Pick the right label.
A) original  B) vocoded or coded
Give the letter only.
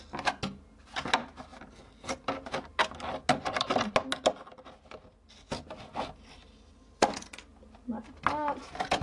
A